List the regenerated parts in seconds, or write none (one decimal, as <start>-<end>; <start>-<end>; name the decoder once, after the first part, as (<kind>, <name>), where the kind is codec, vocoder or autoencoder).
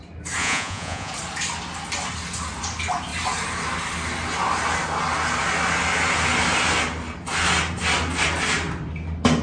0.4-1.1 (vocoder, Vocos)